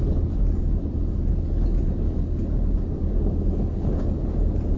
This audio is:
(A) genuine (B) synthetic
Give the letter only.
A